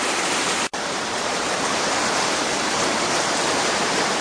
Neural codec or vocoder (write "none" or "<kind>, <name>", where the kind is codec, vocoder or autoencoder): vocoder, BigVGAN v2